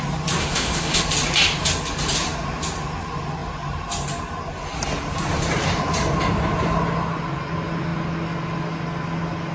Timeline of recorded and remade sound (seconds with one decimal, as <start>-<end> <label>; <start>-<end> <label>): 0.0-0.4 recorded; 0.4-1.0 remade; 1.0-9.5 recorded